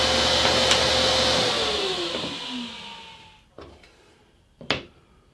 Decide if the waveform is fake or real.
real